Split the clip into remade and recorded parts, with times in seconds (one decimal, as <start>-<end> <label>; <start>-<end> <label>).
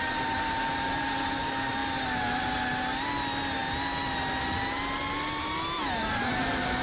0.0-6.8 recorded